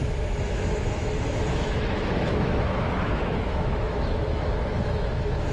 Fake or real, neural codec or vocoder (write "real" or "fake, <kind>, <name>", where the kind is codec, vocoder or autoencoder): fake, autoencoder, DAC-VAE